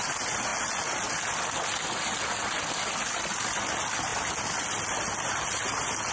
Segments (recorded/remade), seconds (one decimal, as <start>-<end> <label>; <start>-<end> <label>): 0.0-6.1 recorded